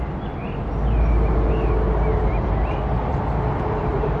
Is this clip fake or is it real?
real